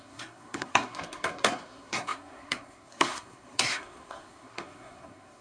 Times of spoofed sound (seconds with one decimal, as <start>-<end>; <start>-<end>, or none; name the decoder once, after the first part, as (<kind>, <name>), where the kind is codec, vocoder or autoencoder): 0.0-5.4 (codec, SNAC)